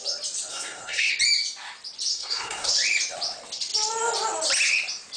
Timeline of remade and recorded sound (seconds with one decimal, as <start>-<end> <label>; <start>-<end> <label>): 0.0-0.5 recorded; 0.5-1.1 remade; 1.1-2.1 recorded; 2.1-2.7 remade; 2.7-5.2 recorded